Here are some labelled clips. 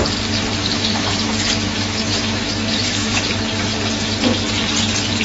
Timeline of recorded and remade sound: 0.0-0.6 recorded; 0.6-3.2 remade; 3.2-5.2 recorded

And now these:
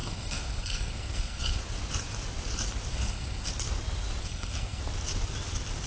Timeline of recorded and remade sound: 0.0-1.6 remade; 1.6-2.9 recorded; 2.9-3.5 remade; 3.5-4.2 recorded; 4.2-4.8 remade; 4.8-5.9 recorded

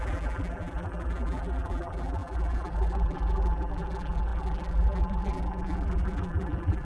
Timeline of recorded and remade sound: 0.0-6.8 remade

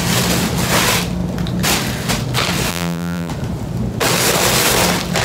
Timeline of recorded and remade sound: 0.0-2.7 recorded; 2.7-3.3 remade; 3.3-5.2 recorded

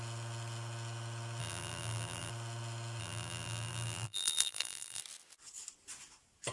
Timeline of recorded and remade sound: 0.0-1.4 recorded; 1.4-2.3 remade; 2.3-3.0 recorded; 3.0-5.0 remade; 5.0-6.5 recorded